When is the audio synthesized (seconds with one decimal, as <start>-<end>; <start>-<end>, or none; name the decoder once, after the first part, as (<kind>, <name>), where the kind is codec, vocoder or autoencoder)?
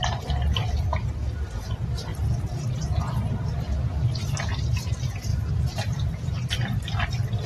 5.3-6.4 (vocoder, BigVGAN v2)